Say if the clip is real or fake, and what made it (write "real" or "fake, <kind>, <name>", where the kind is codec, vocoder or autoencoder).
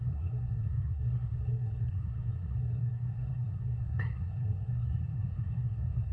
fake, codec, SNAC